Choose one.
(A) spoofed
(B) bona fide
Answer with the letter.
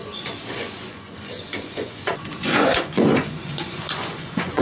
A